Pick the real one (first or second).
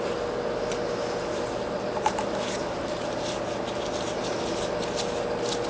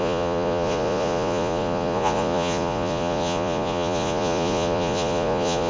first